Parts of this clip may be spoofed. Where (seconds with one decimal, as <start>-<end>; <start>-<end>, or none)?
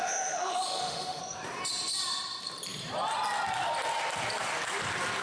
0.0-1.2